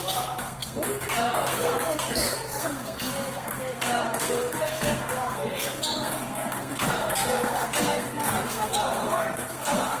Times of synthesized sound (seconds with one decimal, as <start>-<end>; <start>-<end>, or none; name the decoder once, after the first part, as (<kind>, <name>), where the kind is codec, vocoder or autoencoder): 0.0-10.0 (codec, SNAC)